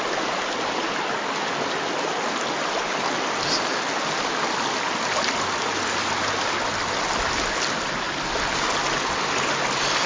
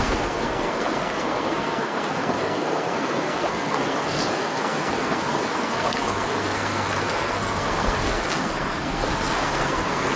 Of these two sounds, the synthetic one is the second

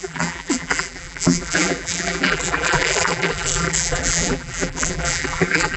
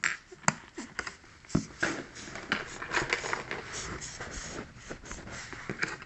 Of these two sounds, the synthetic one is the first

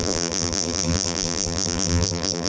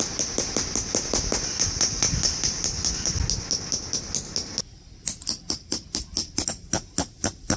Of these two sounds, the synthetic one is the first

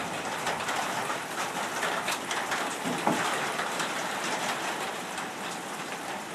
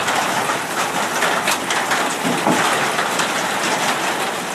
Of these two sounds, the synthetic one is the first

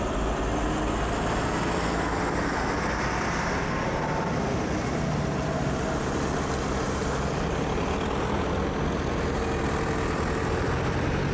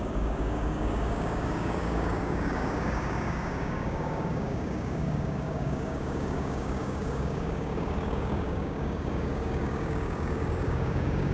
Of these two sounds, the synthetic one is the second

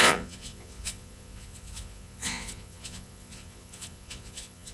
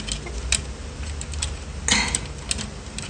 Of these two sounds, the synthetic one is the first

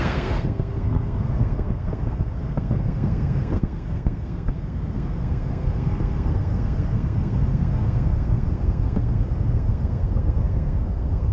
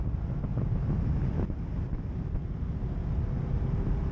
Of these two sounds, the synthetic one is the first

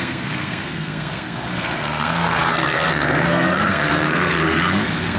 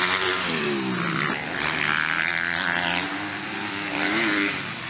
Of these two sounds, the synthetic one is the first